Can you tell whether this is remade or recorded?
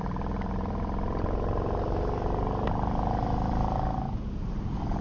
recorded